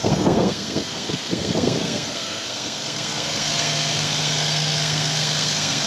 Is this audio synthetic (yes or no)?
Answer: yes